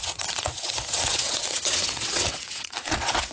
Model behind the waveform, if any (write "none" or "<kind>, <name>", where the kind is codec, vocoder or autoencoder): vocoder, WaveNeXt